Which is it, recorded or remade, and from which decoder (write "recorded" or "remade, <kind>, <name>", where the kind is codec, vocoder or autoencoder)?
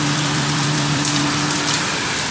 remade, vocoder, BigVGAN v2